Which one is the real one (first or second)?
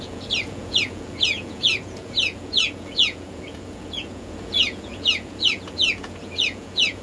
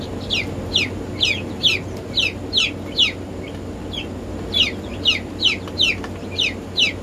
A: second